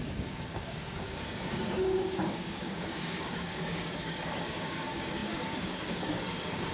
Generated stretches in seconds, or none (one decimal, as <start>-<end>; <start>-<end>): 0.0-6.7